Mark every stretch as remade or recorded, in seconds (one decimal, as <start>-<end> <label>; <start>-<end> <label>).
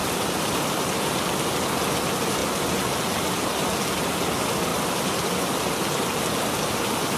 0.0-0.8 remade; 0.8-4.7 recorded; 4.7-5.7 remade; 5.7-7.2 recorded